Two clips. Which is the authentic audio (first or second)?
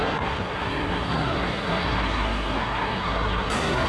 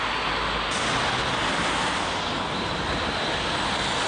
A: second